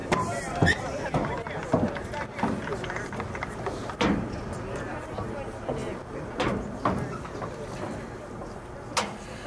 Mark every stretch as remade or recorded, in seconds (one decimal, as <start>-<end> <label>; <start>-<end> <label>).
0.0-1.3 remade; 1.3-9.5 recorded